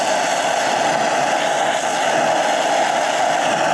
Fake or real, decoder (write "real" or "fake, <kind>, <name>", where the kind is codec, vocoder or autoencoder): real